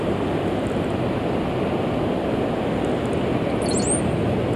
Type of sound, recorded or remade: recorded